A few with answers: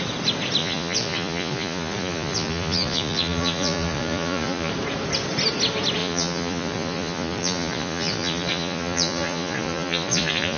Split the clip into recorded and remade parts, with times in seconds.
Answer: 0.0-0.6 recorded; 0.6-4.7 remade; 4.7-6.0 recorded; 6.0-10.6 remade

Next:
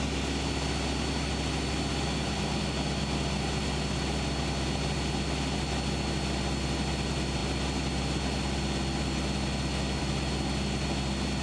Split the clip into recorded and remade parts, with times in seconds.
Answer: 0.0-11.4 recorded

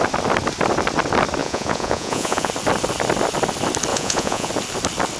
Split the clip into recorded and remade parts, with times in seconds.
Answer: 0.0-1.4 recorded; 1.4-2.5 remade; 2.5-3.9 recorded; 3.9-4.5 remade; 4.5-5.2 recorded

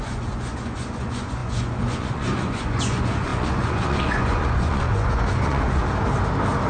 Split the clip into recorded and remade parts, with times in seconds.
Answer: 0.0-5.8 remade; 5.8-6.7 recorded

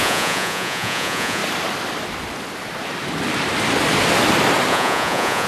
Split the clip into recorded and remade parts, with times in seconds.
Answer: 0.0-1.4 remade; 1.4-4.7 recorded; 4.7-5.5 remade